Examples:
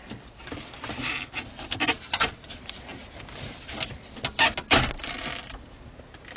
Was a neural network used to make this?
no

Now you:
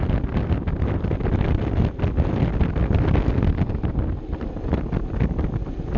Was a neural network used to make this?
no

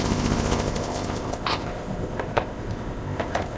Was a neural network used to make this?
yes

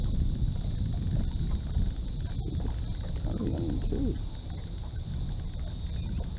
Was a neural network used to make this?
no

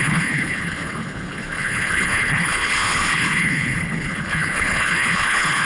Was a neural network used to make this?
yes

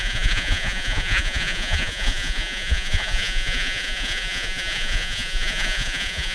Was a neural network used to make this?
yes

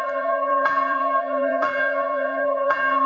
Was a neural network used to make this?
yes